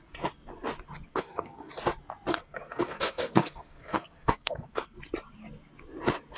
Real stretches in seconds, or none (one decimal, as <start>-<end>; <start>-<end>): 0.0-1.1; 1.7-2.3; 5.0-6.4